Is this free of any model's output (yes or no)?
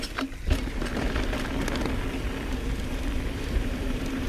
yes